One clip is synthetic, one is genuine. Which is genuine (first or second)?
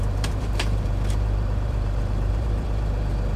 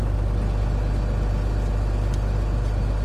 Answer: second